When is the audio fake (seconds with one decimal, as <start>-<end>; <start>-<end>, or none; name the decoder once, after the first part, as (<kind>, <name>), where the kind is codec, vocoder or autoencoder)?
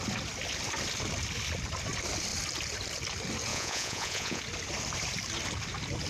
3.5-4.4 (vocoder, Vocos)